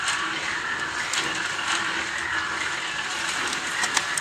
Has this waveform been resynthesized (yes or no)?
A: no